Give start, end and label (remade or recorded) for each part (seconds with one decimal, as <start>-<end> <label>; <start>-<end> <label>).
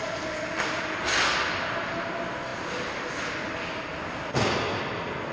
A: 0.0-5.3 recorded